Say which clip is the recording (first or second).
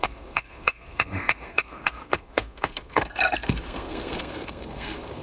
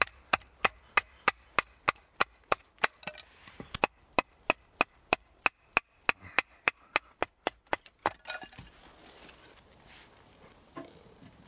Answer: second